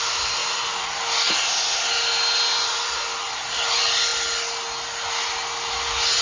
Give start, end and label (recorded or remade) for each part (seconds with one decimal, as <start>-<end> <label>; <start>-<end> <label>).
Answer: 0.0-6.2 recorded

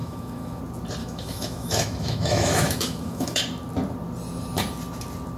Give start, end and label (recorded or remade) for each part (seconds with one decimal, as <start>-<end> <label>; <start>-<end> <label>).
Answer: 0.0-0.6 remade; 0.6-1.0 recorded; 1.0-3.4 remade; 3.4-5.4 recorded

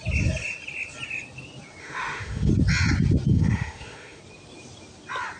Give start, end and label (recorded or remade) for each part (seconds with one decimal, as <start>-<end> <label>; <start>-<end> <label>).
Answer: 0.0-1.8 recorded; 1.8-2.5 remade; 2.5-3.3 recorded; 3.3-4.2 remade; 4.2-5.4 recorded

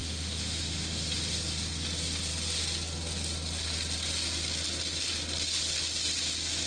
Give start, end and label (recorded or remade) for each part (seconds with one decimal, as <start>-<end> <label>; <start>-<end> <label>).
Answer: 0.0-1.1 remade; 1.1-6.7 recorded

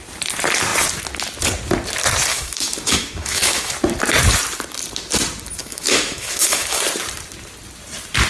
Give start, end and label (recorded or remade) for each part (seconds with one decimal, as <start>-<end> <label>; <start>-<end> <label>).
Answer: 0.0-2.3 recorded; 2.3-3.7 remade; 3.7-5.6 recorded; 5.6-6.8 remade; 6.8-8.3 recorded